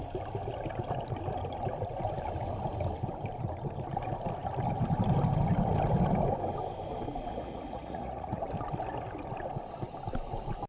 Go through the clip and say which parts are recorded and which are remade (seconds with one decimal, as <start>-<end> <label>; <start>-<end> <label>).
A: 0.0-7.3 recorded; 7.3-8.4 remade; 8.4-10.7 recorded

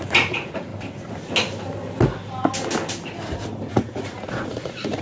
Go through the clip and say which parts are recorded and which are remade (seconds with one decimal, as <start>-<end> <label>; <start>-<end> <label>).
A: 0.0-0.7 remade; 0.7-3.7 recorded; 3.7-5.0 remade